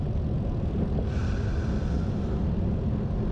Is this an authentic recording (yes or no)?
yes